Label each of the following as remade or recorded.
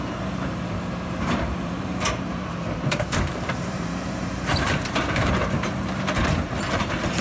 remade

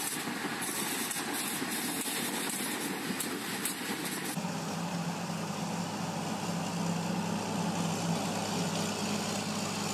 recorded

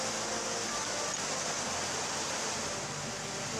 recorded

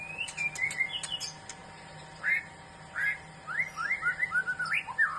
recorded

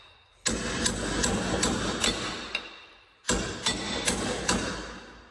recorded